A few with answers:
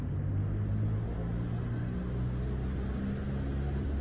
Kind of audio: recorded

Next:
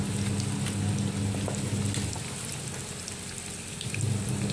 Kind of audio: recorded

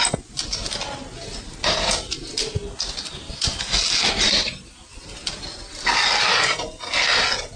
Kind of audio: recorded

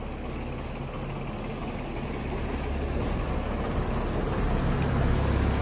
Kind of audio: recorded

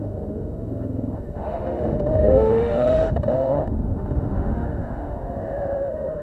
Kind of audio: remade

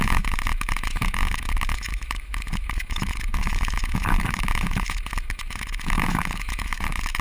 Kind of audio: remade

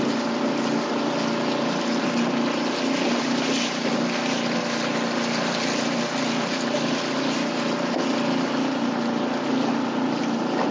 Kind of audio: recorded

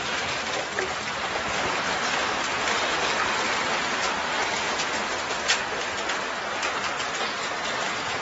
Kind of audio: recorded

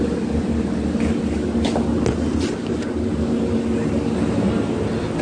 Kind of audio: recorded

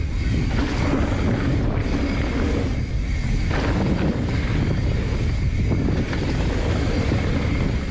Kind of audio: recorded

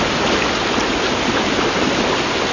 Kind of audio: recorded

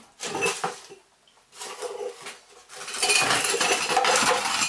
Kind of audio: recorded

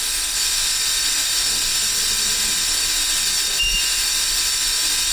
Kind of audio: recorded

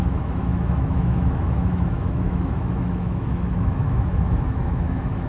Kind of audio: remade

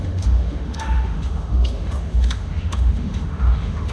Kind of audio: remade